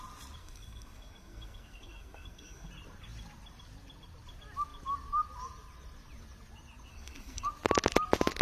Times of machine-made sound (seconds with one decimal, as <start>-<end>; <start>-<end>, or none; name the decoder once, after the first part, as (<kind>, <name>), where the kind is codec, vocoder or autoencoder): 0.4-2.7 (codec, SNAC); 6.9-7.5